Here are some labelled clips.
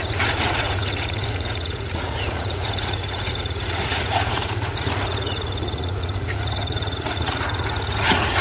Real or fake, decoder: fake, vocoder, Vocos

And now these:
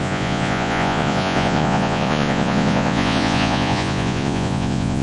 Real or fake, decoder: fake, vocoder, Vocos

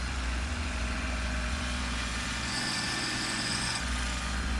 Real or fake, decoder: fake, vocoder, Vocos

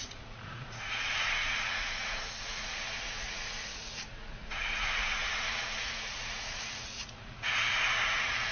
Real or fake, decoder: fake, vocoder, Vocos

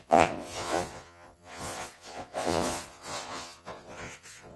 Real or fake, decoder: fake, vocoder, Vocos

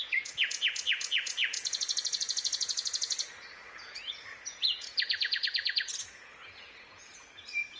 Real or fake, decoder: fake, vocoder, Vocos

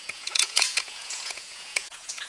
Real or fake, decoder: fake, vocoder, Vocos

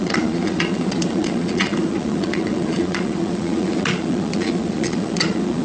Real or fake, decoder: fake, vocoder, Vocos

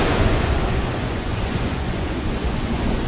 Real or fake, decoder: fake, vocoder, Vocos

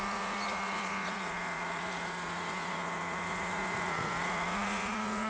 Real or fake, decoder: fake, vocoder, Vocos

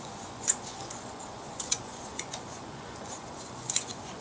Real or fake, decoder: fake, vocoder, Vocos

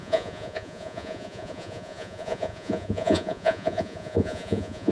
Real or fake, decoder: fake, vocoder, Vocos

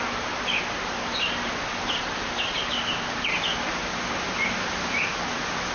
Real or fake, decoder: real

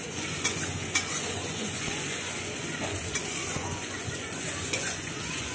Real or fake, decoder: fake, vocoder, Vocos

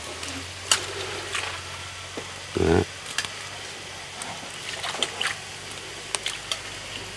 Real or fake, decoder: real